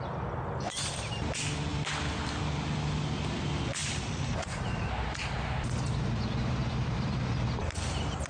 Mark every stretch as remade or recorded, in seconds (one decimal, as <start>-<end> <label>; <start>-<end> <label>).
0.0-3.8 recorded; 3.8-7.3 remade; 7.3-8.3 recorded